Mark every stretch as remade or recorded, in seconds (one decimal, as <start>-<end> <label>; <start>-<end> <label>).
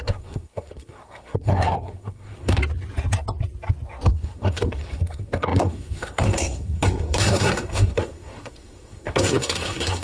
0.0-2.6 remade; 2.6-4.1 recorded; 4.1-10.0 remade